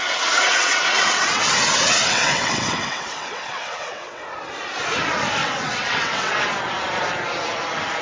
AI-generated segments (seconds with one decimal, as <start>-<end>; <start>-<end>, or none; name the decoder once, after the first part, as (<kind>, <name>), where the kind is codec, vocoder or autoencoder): 0.0-4.2 (vocoder, WaveNeXt); 5.4-6.5